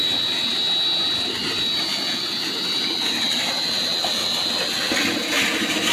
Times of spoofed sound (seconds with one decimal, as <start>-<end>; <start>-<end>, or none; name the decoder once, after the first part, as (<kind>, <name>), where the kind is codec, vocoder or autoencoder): none